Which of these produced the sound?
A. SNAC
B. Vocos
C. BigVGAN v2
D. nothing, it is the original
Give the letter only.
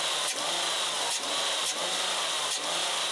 D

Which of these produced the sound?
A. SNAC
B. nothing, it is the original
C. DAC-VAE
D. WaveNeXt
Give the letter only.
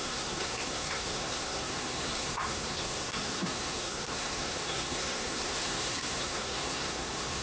A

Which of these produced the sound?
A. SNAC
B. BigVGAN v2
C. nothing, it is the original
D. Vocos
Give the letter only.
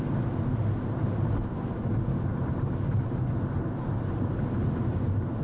C